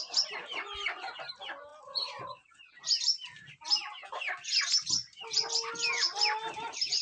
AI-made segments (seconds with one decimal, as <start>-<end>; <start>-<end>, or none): none